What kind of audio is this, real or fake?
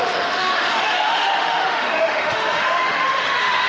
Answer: fake